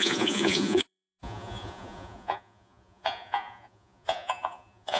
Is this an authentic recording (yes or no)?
no